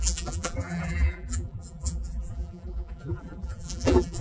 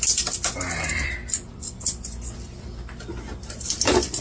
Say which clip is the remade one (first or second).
first